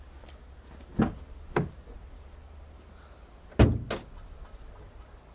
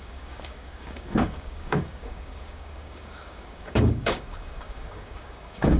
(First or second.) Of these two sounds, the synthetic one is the second